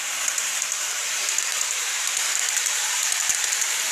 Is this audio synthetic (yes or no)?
yes